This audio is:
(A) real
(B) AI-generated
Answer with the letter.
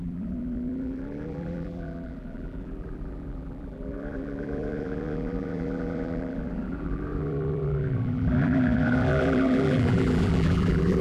B